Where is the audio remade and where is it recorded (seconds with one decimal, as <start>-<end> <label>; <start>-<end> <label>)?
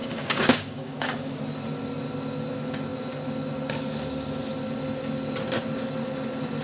0.0-1.4 remade; 1.4-6.6 recorded